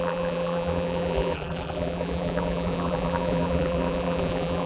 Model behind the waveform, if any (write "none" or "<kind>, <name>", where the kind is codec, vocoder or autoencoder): vocoder, BigVGAN v2